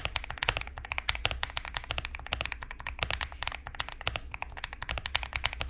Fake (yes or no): no